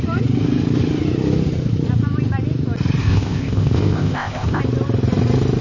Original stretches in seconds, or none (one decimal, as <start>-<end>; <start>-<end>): 0.0-3.0; 4.6-5.6